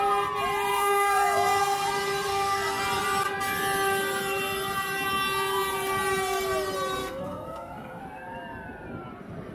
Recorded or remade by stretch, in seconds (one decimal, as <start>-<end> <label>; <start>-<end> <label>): 0.0-0.7 recorded; 0.7-1.9 remade; 1.9-2.3 recorded; 2.3-2.8 remade; 2.8-7.0 recorded; 7.0-8.0 remade; 8.0-9.5 recorded